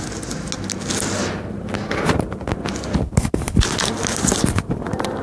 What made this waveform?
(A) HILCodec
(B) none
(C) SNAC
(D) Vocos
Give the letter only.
B